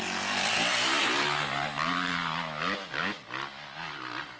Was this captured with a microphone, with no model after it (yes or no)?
yes